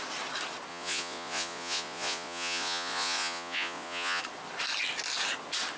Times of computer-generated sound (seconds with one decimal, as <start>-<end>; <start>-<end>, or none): 0.7-4.2